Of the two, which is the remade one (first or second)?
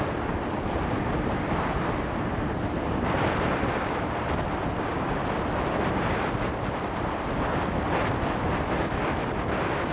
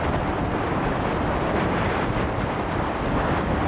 second